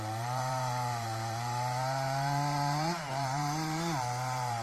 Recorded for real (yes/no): no